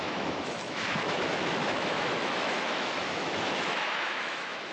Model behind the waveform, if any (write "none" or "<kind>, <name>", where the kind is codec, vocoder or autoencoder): autoencoder, DAC-VAE